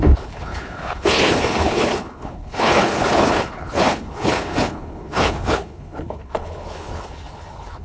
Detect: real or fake fake